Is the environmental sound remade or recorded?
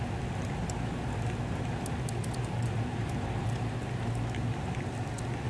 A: recorded